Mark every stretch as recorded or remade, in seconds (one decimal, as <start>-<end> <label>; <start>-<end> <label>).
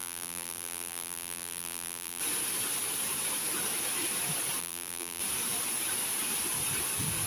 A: 0.0-2.2 remade; 2.2-4.6 recorded; 4.6-5.2 remade; 5.2-7.3 recorded